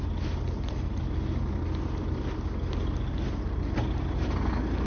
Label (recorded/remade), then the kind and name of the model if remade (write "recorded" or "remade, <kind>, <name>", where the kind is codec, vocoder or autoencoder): recorded